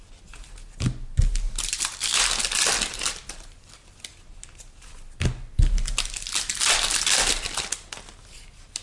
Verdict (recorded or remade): recorded